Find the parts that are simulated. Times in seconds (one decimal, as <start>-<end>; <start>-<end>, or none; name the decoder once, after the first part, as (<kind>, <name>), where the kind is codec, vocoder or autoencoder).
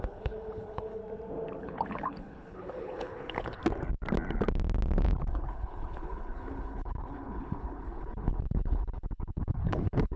0.0-1.0 (codec, HILCodec); 1.6-3.6; 5.3-10.2